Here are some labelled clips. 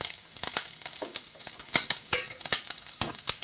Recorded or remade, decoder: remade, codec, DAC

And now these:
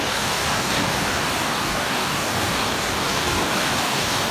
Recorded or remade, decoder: remade, codec, DAC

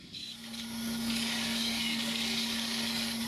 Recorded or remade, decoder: remade, codec, DAC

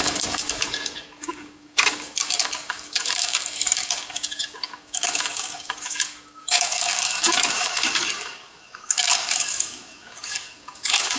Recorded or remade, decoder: remade, codec, DAC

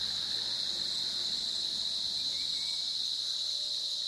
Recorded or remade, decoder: recorded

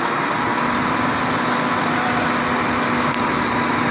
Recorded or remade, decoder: recorded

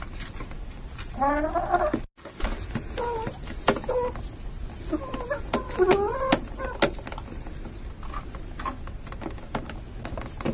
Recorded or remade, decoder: recorded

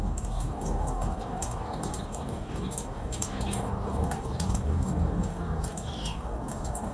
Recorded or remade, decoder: remade, codec, DAC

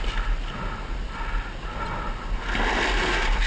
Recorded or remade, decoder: recorded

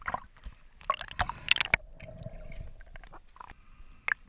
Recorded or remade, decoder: recorded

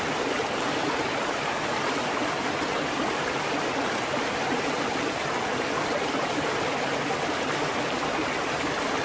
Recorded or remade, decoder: recorded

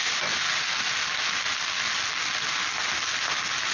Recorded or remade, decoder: recorded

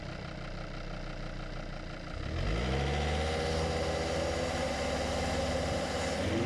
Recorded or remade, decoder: recorded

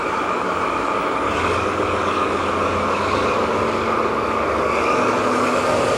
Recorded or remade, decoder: remade, codec, DAC